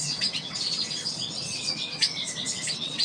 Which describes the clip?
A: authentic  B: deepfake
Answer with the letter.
B